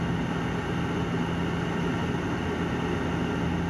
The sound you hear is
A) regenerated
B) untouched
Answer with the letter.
B